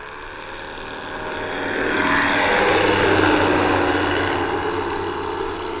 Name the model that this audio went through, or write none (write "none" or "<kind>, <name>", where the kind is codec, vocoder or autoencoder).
none